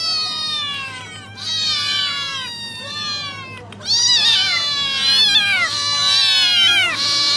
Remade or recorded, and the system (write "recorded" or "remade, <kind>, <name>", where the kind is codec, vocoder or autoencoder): recorded